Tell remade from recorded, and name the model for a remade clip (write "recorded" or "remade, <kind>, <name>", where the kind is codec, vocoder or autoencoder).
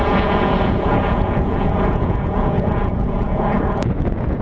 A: remade, vocoder, Vocos